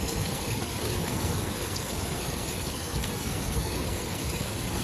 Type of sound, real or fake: fake